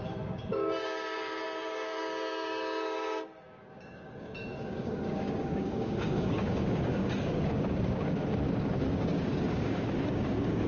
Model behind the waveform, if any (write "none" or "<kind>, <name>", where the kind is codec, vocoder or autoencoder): codec, DAC